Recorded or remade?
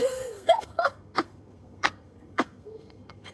remade